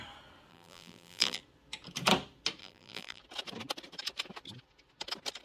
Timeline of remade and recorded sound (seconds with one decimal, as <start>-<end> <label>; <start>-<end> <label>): 0.0-0.5 recorded; 0.5-1.4 remade; 1.4-2.6 recorded; 2.6-3.2 remade; 3.2-5.4 recorded